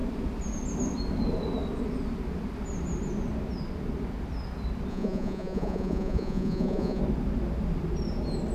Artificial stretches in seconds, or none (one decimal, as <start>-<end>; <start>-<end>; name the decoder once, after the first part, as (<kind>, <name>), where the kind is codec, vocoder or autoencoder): 4.9-7.0 (vocoder, Vocos)